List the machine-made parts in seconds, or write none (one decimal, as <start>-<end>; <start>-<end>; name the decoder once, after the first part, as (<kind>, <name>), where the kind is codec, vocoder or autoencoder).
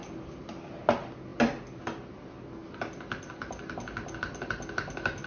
none